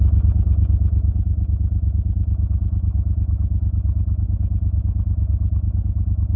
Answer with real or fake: real